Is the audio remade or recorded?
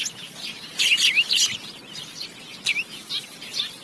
recorded